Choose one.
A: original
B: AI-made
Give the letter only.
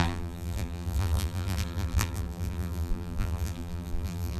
B